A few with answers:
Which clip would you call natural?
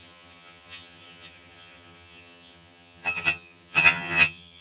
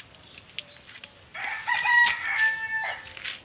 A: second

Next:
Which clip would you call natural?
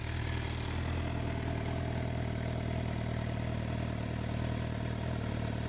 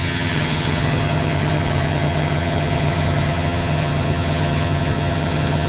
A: first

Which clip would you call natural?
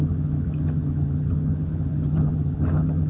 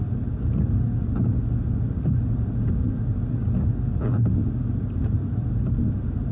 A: second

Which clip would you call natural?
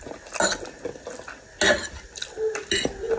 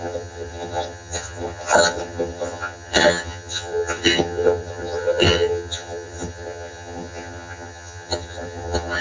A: first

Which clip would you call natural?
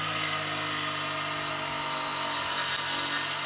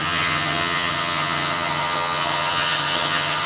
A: first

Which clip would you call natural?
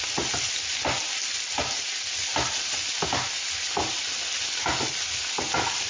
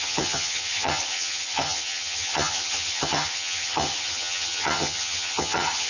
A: first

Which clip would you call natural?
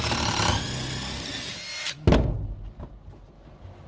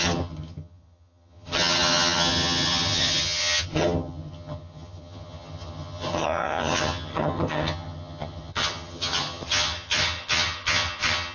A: first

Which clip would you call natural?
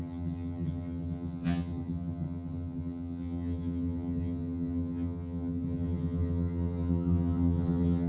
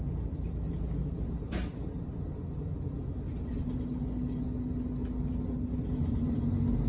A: second